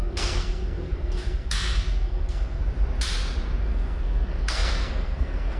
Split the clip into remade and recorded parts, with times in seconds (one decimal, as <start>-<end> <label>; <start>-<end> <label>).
0.0-2.6 remade; 2.6-3.6 recorded; 3.6-5.6 remade

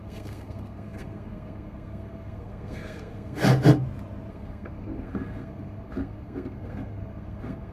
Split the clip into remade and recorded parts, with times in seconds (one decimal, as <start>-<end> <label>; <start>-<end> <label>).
0.0-3.4 remade; 3.4-4.3 recorded; 4.3-7.7 remade

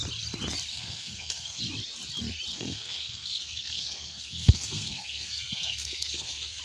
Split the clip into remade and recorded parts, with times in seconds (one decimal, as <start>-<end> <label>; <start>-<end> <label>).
0.0-0.7 recorded; 0.7-1.6 remade; 1.6-2.5 recorded; 2.5-6.6 remade